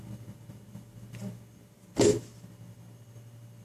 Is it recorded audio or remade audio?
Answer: recorded